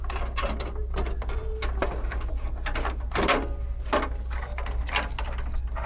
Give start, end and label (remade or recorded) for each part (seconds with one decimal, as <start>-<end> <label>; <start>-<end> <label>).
0.0-5.9 recorded